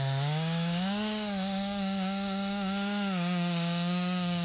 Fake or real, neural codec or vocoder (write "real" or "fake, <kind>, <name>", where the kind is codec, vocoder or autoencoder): fake, codec, DAC